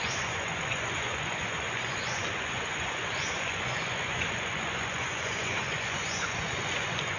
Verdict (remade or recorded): remade